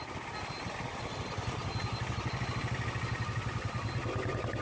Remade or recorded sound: recorded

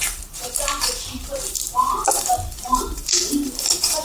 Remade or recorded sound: remade